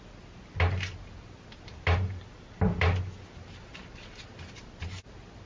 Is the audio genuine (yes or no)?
yes